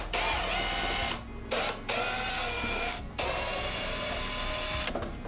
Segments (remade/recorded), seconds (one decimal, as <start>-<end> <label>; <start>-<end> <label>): 0.0-2.3 recorded; 2.3-3.0 remade; 3.0-5.3 recorded